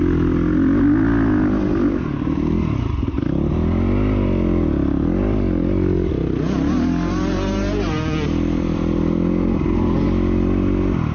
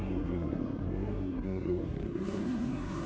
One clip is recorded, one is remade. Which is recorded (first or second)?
first